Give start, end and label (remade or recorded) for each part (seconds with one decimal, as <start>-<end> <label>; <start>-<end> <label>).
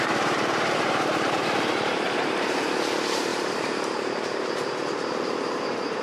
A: 0.0-6.0 remade